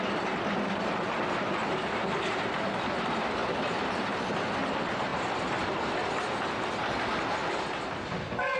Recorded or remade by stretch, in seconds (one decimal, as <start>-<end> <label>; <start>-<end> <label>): 0.0-8.6 recorded